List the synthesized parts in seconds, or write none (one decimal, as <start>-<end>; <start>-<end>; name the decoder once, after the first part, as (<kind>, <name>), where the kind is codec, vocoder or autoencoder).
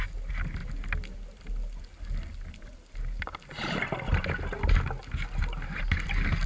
none